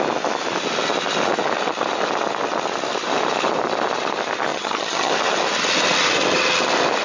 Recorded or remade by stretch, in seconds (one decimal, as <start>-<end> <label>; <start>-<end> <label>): 0.0-4.5 recorded; 4.5-5.1 remade; 5.1-7.0 recorded